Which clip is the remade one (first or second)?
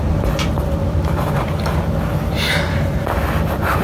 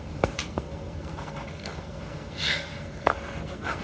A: second